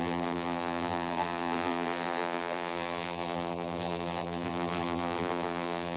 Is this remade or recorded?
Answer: remade